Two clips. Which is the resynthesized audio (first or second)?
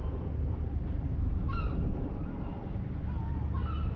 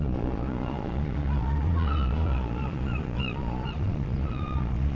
second